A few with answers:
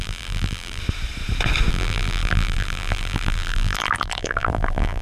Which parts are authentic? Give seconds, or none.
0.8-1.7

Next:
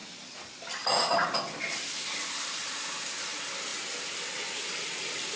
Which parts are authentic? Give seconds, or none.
0.0-5.4

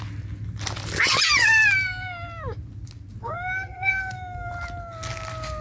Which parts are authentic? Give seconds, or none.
0.0-3.2; 4.5-5.6